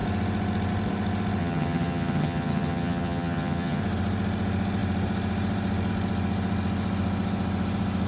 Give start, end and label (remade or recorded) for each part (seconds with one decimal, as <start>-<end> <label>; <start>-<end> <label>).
0.0-1.4 recorded; 1.4-3.8 remade; 3.8-8.1 recorded